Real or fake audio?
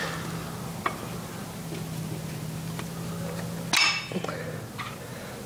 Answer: real